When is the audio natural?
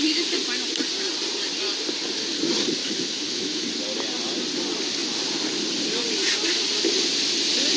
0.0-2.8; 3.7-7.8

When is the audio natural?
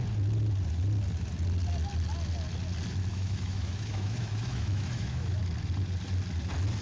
0.0-3.1; 5.4-6.8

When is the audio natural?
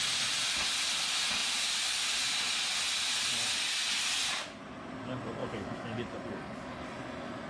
0.0-5.4; 6.0-7.5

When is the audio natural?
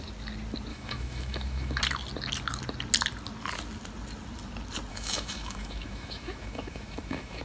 0.0-0.7; 1.8-4.9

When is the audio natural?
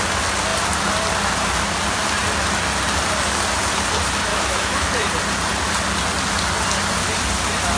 0.0-4.3; 4.9-7.8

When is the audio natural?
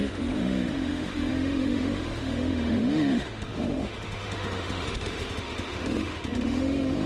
none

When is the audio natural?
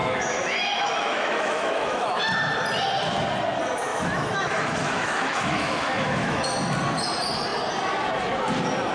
2.2-3.9; 6.5-8.9